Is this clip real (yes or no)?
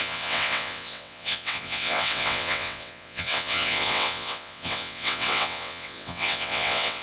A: no